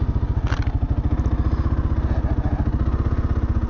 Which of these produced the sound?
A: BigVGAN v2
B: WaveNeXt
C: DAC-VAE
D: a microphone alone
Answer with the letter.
D